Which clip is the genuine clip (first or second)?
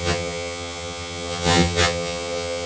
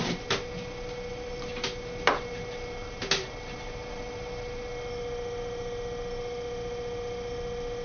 second